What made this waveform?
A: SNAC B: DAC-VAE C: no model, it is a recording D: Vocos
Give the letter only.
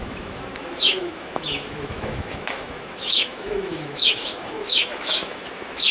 B